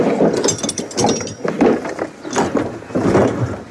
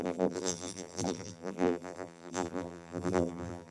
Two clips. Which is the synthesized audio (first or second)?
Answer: second